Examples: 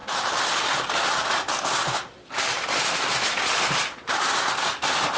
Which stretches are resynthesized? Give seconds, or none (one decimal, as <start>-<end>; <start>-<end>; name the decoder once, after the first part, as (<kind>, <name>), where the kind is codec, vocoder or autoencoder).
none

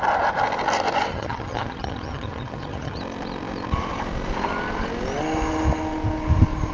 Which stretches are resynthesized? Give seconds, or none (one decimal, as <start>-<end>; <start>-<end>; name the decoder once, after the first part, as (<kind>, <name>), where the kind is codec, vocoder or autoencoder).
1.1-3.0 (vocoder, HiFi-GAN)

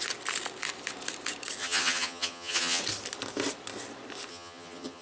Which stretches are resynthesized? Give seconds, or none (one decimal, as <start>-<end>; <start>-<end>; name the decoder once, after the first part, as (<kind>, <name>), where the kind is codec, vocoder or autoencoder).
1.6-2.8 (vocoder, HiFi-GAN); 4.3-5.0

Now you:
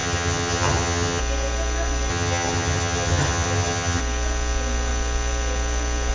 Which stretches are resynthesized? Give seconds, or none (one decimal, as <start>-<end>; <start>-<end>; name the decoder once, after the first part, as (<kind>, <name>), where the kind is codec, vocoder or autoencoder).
0.0-1.2 (vocoder, HiFi-GAN); 2.1-4.0